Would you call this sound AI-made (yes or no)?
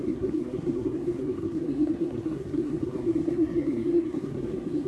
yes